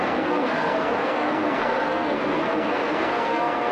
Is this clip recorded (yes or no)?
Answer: no